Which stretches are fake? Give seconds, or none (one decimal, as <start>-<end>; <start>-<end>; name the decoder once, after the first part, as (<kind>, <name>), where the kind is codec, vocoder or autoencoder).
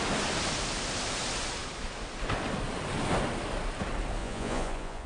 4.2-5.1 (vocoder, Vocos)